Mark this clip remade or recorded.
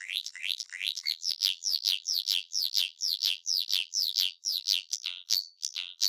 remade